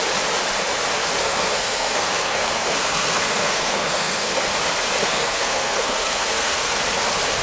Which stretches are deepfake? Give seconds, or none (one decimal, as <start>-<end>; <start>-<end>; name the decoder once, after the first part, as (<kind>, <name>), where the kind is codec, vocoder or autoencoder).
1.2-4.4 (codec, SNAC); 5.0-6.8